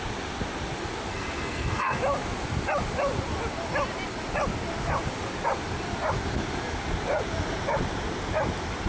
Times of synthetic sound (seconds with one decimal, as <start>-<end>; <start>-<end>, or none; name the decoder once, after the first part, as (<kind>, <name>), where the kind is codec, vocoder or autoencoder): 1.1-2.0 (codec, SNAC)